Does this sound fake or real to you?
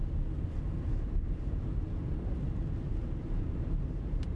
real